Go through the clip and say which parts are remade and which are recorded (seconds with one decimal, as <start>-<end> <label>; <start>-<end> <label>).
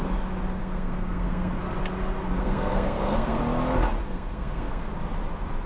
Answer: 0.0-0.6 recorded; 0.6-1.6 remade; 1.6-2.4 recorded; 2.4-3.4 remade; 3.4-4.0 recorded; 4.0-4.9 remade; 4.9-5.7 recorded